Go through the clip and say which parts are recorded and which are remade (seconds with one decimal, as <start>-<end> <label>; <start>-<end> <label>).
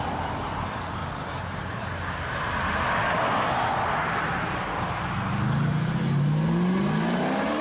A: 0.0-7.6 recorded